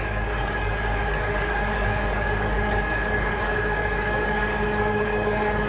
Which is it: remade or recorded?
remade